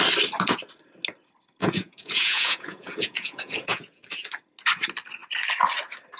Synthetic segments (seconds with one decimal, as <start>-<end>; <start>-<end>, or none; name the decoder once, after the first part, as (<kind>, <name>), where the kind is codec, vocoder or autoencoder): 1.6-4.0 (vocoder, Vocos)